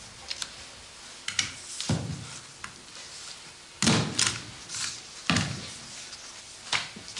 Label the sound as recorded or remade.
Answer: recorded